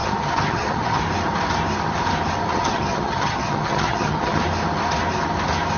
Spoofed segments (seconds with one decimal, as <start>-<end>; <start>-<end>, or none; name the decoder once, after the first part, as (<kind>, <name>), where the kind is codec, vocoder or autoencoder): 0.0-1.0 (vocoder, HiFi-GAN); 2.5-4.4